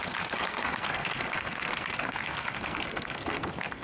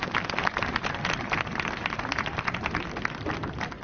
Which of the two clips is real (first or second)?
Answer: second